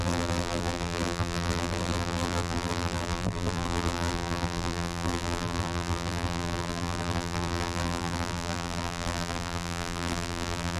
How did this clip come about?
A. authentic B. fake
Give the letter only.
B